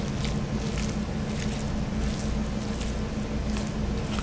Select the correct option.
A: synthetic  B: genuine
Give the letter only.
B